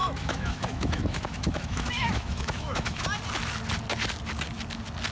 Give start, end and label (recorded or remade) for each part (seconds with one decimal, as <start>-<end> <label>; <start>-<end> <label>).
0.0-3.0 remade; 3.0-5.1 recorded